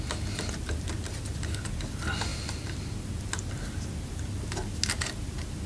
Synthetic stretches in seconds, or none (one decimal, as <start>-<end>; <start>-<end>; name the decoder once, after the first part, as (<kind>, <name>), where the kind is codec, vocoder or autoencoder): none